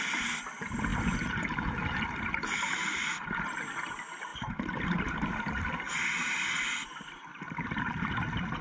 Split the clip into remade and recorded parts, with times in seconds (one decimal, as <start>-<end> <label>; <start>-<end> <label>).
0.0-0.9 recorded; 0.9-3.3 remade; 3.3-4.3 recorded; 4.3-5.7 remade; 5.7-7.3 recorded; 7.3-8.0 remade; 8.0-8.6 recorded